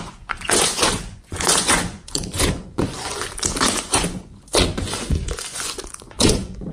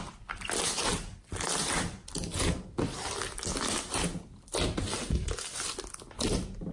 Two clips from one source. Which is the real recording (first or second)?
second